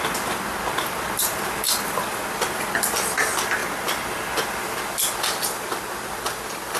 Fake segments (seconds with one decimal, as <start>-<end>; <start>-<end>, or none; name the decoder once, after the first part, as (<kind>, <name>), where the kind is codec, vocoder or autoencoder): none